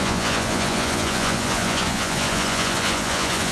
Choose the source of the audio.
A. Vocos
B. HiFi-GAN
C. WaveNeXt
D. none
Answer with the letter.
A